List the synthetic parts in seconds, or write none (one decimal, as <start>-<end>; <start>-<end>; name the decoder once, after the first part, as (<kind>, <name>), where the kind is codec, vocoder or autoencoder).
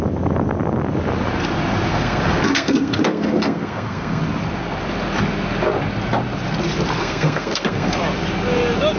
1.9-4.2 (codec, SNAC); 7.0-8.0